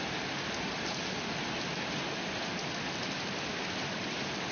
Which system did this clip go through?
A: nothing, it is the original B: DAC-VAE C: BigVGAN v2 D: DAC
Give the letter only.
A